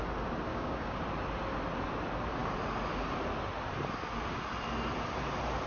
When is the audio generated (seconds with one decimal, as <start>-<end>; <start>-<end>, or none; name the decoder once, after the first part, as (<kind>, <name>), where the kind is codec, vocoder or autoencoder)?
0.5-1.0 (codec, DAC)